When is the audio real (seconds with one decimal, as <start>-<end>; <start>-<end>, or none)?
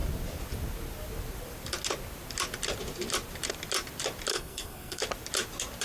0.0-4.3; 5.0-5.8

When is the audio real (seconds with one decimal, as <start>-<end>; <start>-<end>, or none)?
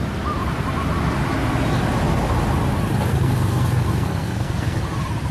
0.0-3.1; 4.8-5.3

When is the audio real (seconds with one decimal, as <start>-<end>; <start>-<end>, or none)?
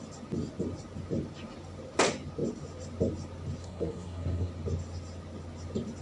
0.0-3.6; 4.5-6.0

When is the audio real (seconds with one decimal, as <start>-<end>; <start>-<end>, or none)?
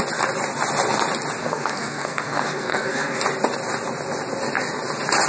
0.0-1.4; 3.2-5.3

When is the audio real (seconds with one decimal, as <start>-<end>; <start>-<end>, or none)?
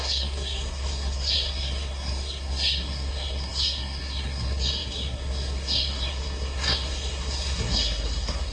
none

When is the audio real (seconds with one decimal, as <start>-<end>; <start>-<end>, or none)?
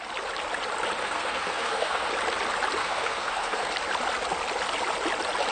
0.0-1.0; 2.1-2.8; 3.7-5.5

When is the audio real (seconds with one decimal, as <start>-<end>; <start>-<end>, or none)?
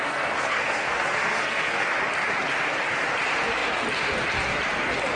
1.9-5.2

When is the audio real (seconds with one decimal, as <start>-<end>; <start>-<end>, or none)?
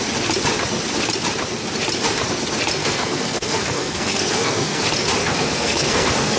0.0-2.8; 4.8-5.2